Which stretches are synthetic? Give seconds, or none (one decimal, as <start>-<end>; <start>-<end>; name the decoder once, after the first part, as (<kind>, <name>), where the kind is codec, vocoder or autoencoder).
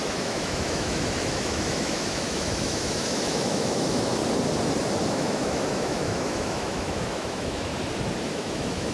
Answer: 0.0-4.2 (autoencoder, DAC-VAE); 5.1-7.7; 8.2-8.9